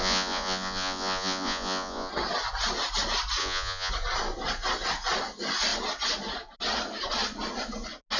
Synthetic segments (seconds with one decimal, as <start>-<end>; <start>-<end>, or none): 0.0-2.1; 3.4-3.9